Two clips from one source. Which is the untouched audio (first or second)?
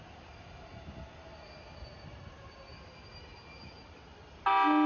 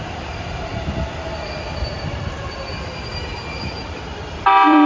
first